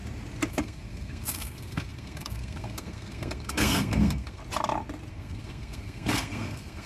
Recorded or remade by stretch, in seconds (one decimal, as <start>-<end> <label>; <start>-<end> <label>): 0.0-0.5 recorded; 0.5-4.4 remade; 4.4-5.1 recorded; 5.1-6.9 remade